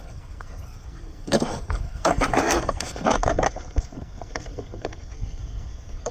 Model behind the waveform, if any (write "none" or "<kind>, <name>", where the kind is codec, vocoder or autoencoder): codec, SNAC